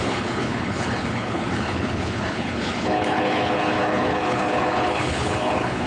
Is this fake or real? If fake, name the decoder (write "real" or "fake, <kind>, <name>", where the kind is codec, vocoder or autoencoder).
fake, codec, HILCodec